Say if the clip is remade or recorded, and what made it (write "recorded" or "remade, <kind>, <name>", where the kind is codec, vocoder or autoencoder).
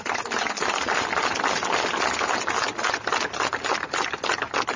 recorded